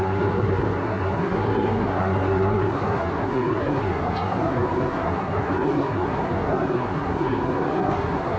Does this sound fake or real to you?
fake